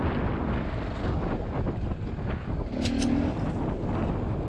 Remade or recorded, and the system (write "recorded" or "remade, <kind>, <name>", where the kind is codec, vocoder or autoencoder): recorded